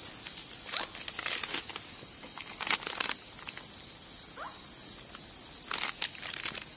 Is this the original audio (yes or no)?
yes